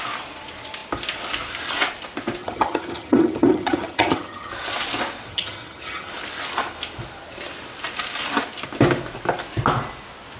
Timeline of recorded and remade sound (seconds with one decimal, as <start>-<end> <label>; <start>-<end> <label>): 0.0-2.4 recorded; 2.4-4.5 remade; 4.5-5.3 recorded; 5.3-6.1 remade; 6.1-10.4 recorded